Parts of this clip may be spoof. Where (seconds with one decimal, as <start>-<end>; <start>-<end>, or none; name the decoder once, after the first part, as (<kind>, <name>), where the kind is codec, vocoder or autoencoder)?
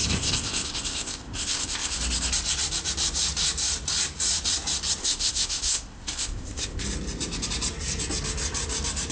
0.0-2.0 (codec, ZipCodec); 5.0-6.8